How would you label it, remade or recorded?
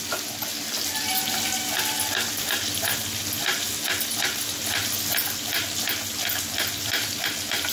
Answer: recorded